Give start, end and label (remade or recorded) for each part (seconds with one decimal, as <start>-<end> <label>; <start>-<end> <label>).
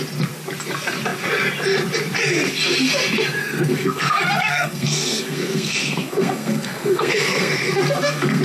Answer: 0.0-3.4 recorded; 3.4-8.4 remade